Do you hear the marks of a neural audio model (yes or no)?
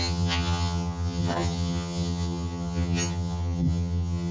yes